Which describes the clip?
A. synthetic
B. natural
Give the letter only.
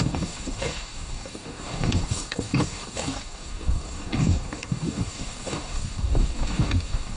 A